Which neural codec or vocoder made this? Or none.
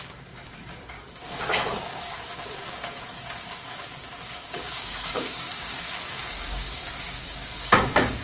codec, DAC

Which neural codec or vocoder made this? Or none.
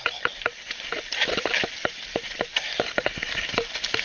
vocoder, BigVGAN v2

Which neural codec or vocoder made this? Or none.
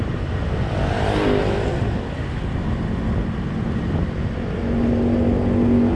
none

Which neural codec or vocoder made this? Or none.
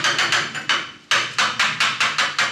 none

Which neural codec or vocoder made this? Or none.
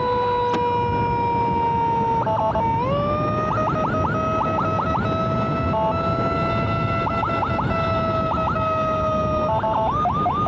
none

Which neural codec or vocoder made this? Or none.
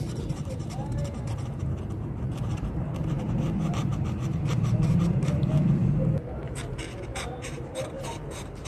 vocoder, BigVGAN v2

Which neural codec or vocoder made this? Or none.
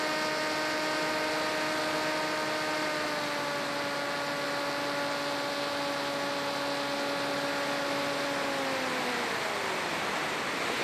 none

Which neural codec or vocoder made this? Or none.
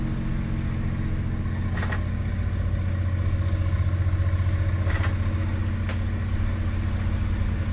none